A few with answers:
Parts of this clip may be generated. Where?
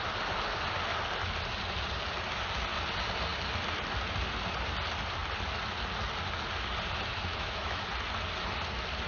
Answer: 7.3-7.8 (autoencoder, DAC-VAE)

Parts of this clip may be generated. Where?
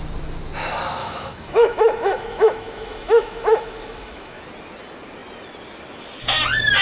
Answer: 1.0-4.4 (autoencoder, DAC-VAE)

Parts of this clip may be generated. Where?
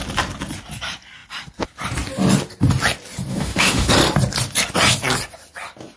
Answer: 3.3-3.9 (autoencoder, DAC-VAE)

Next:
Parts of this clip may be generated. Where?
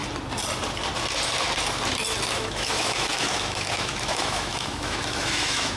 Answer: 2.3-5.8 (autoencoder, DAC-VAE)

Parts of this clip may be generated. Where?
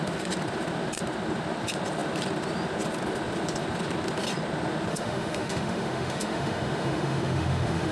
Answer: 4.9-7.9 (autoencoder, DAC-VAE)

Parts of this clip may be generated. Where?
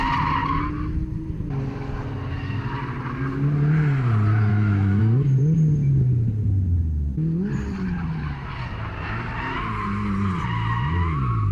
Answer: 4.5-5.0 (autoencoder, DAC-VAE)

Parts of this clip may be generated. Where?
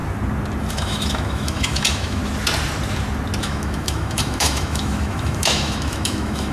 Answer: 0.7-2.2 (autoencoder, DAC-VAE); 3.4-6.5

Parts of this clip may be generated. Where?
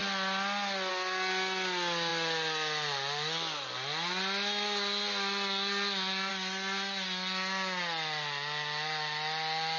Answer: none